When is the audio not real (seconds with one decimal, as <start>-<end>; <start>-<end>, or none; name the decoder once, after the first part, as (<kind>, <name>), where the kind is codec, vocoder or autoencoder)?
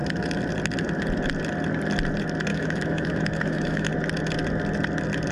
2.5-3.9 (autoencoder, DAC-VAE)